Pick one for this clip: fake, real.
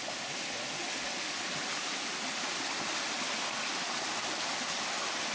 real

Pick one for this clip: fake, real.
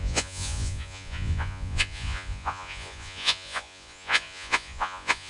fake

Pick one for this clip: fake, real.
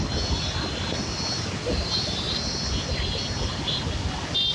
real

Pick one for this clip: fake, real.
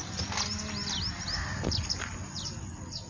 real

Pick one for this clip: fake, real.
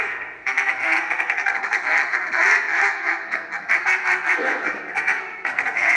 fake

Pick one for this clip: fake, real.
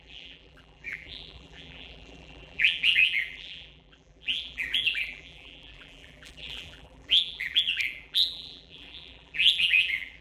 fake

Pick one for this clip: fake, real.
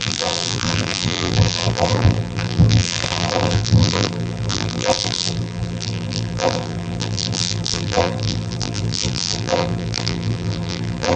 fake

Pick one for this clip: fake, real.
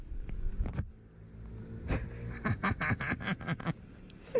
real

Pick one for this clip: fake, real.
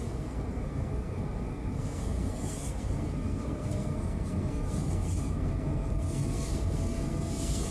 fake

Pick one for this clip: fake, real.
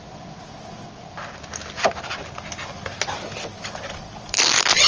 real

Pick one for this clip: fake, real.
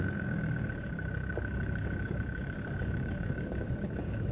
fake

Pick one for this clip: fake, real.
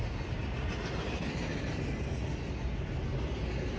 real